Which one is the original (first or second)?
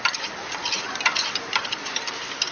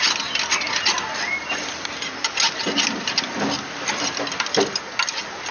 second